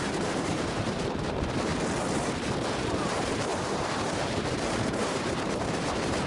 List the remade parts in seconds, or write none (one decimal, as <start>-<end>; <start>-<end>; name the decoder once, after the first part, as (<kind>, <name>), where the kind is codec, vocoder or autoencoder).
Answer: 0.0-1.7 (vocoder, BigVGAN v2); 2.8-6.3